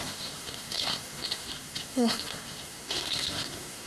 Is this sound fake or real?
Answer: fake